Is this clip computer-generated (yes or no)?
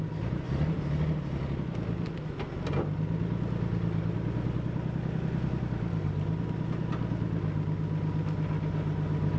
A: no